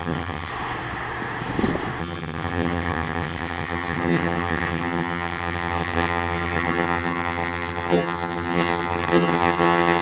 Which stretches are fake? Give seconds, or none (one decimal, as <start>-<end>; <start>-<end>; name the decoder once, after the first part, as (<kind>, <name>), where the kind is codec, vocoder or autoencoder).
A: 0.0-0.5 (vocoder, HiFi-GAN); 2.0-10.0